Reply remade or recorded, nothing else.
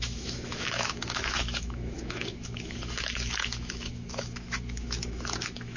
remade